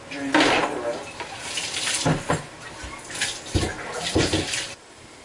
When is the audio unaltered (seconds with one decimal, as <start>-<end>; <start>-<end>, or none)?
0.0-3.7; 4.6-5.2